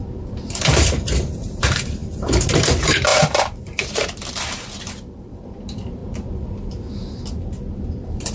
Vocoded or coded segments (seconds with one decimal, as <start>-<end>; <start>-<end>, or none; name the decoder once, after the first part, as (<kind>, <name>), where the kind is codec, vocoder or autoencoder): 0.0-6.0 (vocoder, BigVGAN v2); 7.7-8.3